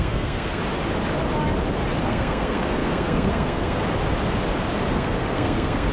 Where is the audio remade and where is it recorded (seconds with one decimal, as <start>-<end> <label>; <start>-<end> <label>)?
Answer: 0.0-0.6 remade; 0.6-2.0 recorded; 2.0-3.8 remade; 3.8-4.9 recorded; 4.9-5.9 remade